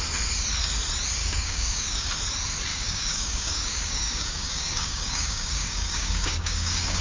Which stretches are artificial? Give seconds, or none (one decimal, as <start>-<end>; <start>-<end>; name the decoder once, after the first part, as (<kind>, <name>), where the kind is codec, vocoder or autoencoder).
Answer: 1.2-2.1 (codec, DAC); 2.7-7.0